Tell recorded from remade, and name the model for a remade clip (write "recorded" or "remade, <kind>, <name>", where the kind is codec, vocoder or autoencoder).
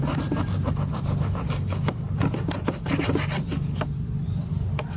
recorded